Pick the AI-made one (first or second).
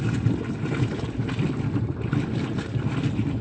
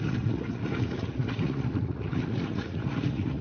second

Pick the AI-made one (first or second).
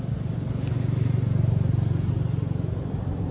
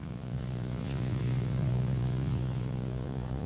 second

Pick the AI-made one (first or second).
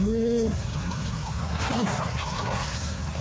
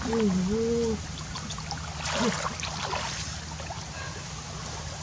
first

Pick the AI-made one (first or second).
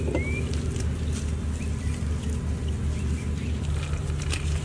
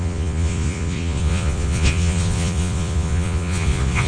second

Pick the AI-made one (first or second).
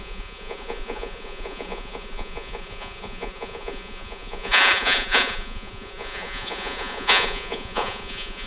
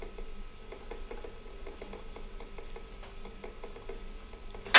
first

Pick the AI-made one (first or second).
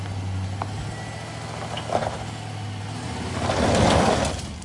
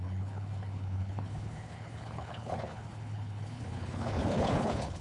second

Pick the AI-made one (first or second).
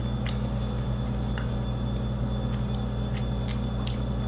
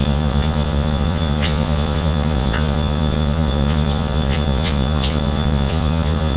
second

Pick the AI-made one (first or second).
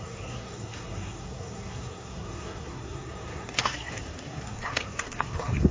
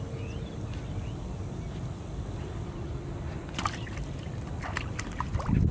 first